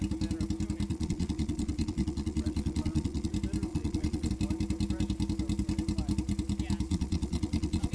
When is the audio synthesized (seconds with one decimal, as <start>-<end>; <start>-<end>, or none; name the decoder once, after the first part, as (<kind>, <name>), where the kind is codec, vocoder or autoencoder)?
0.9-3.3 (vocoder, Vocos); 3.7-4.3; 6.9-7.9